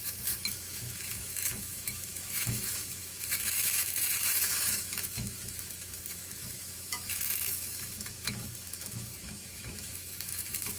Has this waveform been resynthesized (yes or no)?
yes